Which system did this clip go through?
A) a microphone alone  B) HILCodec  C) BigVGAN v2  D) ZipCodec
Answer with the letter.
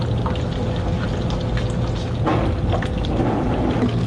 A